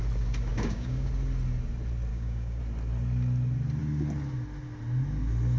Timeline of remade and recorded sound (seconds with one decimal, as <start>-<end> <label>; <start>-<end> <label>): 0.0-0.5 recorded; 0.5-1.1 remade; 1.1-2.1 recorded; 2.1-2.6 remade; 2.6-5.6 recorded